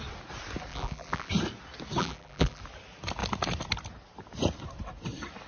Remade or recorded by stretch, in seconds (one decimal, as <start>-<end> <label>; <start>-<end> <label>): 0.0-0.7 recorded; 0.7-1.3 remade; 1.3-2.0 recorded; 2.0-2.6 remade; 2.6-5.5 recorded